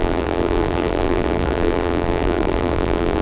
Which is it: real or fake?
fake